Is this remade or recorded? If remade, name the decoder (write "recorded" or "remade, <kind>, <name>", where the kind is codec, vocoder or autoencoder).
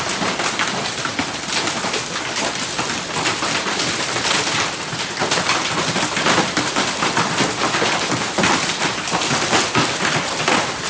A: recorded